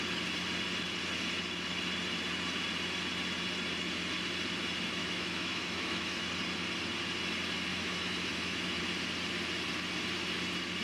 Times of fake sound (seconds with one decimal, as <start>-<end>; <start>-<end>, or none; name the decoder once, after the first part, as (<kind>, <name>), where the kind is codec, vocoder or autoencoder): 5.0-6.3 (autoencoder, DAC-VAE); 7.7-8.8